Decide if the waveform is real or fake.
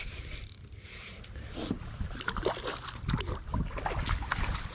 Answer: fake